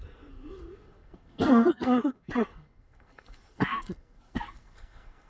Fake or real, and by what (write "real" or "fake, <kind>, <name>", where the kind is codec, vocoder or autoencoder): fake, codec, SNAC